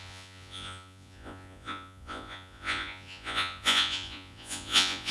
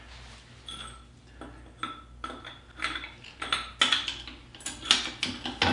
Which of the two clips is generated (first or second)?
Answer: first